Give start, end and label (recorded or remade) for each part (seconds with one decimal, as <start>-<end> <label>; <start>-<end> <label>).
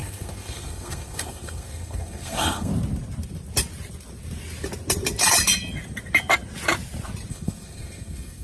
0.0-2.7 remade; 2.7-7.3 recorded; 7.3-8.4 remade